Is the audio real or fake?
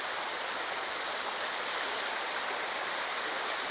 real